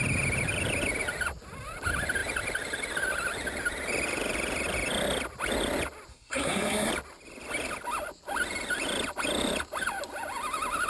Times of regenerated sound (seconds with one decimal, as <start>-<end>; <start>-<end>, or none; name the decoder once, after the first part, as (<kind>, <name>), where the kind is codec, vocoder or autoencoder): 6.1-6.9 (codec, SNAC)